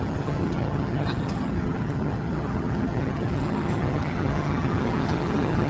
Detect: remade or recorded remade